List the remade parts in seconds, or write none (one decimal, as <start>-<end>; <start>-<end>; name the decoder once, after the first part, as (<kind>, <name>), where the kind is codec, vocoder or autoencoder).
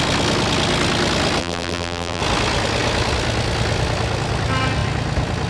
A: 1.4-2.2 (vocoder, BigVGAN v2)